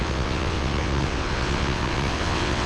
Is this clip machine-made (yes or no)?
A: yes